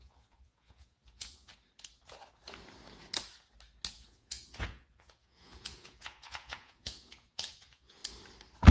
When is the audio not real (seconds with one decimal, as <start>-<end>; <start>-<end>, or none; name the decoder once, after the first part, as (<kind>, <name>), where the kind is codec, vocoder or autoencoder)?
0.0-1.5 (vocoder, Vocos); 3.9-8.0